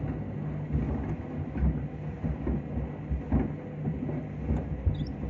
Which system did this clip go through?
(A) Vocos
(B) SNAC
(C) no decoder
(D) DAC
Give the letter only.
C